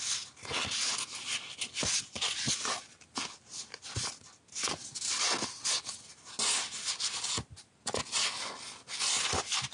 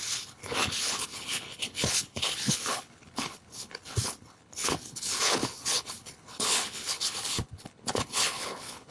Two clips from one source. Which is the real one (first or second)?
first